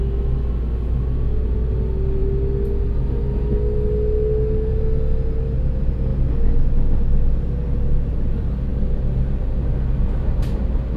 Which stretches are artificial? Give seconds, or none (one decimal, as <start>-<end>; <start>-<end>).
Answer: none